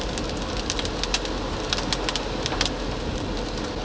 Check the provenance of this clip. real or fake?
real